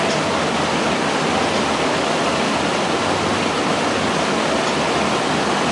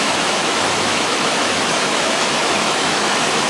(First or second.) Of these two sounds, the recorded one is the first